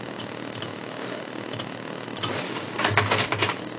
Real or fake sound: real